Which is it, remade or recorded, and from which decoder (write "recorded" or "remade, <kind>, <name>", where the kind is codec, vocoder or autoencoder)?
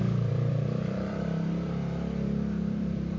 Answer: remade, vocoder, BigVGAN v2